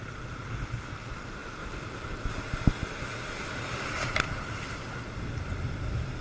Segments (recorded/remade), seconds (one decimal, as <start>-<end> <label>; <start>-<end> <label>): 0.0-6.2 recorded